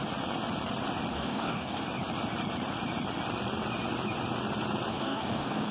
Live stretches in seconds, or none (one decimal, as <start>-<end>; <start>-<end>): 0.0-1.1; 1.8-4.9